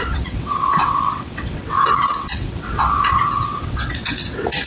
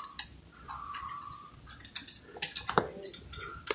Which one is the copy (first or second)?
first